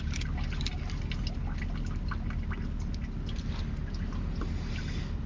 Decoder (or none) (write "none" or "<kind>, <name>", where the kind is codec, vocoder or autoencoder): none